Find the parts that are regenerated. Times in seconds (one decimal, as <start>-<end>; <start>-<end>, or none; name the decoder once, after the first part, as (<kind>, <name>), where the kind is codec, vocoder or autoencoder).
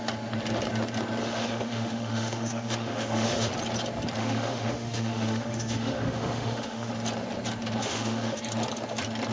1.2-3.5 (autoencoder, DAC-VAE); 4.2-6.9; 7.8-8.4